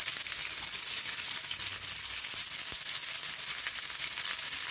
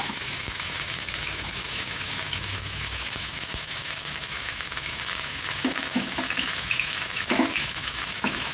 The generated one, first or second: second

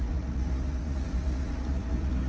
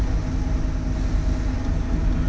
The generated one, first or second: first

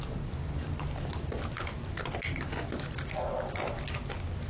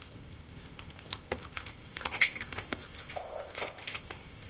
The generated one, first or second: second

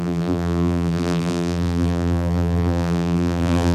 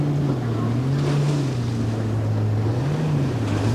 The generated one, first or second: first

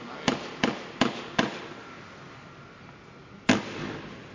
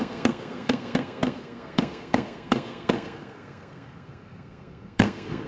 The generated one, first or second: second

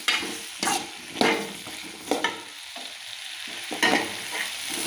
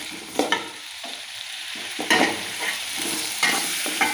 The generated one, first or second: second